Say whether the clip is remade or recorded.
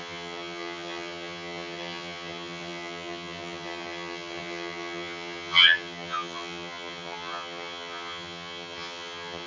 remade